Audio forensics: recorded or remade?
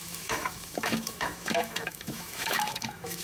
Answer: remade